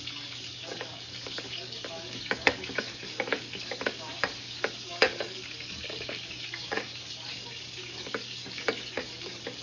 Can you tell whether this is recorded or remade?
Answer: remade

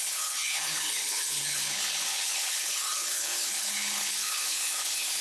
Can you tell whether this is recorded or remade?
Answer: remade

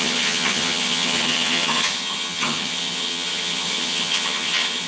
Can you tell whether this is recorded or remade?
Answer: remade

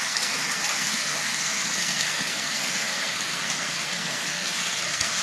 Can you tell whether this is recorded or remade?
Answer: remade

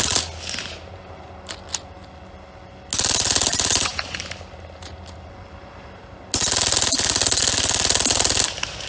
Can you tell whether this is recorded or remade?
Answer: recorded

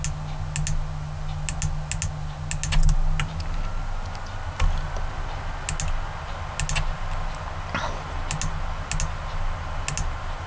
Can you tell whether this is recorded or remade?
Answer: recorded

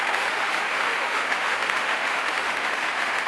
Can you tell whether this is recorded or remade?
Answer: remade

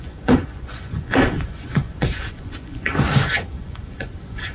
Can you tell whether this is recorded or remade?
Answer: remade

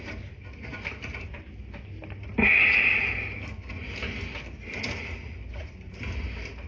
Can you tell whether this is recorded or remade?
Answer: recorded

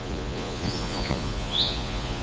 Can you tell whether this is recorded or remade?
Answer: remade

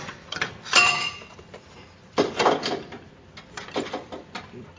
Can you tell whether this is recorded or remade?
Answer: recorded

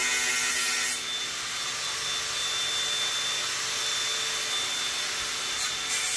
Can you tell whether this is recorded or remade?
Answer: recorded